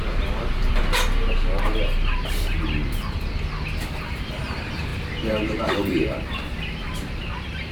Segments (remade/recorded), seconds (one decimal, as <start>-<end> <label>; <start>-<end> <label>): 0.0-0.6 remade; 0.6-3.4 recorded; 3.4-4.9 remade; 4.9-5.6 recorded; 5.6-7.7 remade